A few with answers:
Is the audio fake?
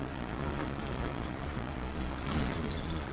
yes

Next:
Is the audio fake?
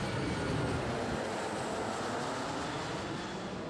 no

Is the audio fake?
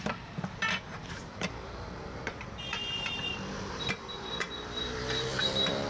yes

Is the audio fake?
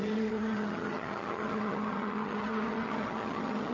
yes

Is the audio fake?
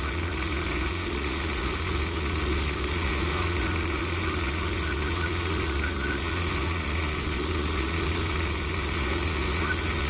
yes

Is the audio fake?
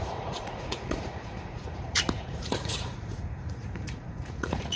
yes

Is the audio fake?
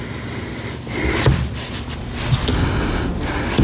no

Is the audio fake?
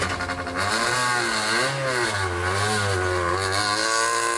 no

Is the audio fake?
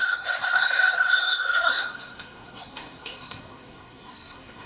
yes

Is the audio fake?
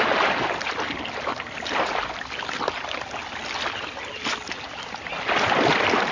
no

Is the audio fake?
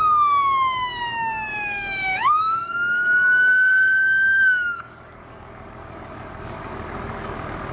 yes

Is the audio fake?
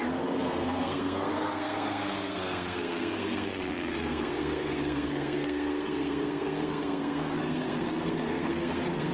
yes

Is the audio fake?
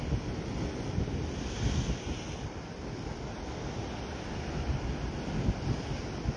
no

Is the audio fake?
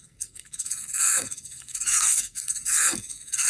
yes